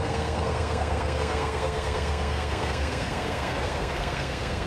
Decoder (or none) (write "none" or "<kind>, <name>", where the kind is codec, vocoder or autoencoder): codec, SNAC